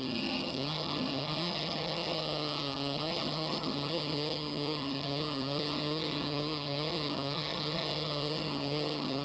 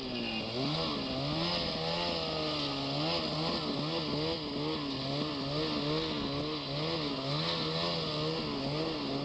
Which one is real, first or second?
second